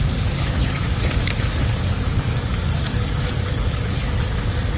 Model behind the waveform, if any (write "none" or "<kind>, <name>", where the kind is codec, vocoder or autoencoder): codec, DAC